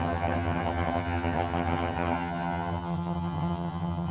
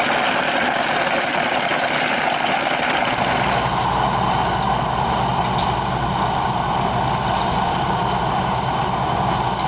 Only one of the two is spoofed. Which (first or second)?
first